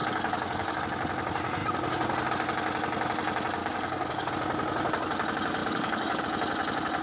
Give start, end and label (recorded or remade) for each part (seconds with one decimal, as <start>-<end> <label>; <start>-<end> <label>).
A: 0.0-0.8 remade; 0.8-3.6 recorded; 3.6-4.3 remade; 4.3-5.6 recorded; 5.6-6.2 remade; 6.2-7.0 recorded